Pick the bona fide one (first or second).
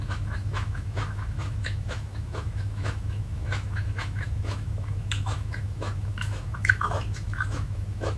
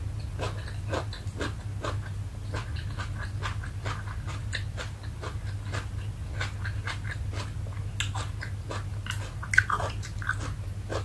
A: second